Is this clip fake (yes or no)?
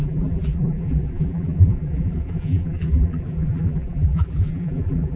yes